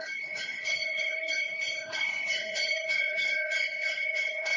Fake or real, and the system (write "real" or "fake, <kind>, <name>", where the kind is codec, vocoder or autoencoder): fake, codec, HILCodec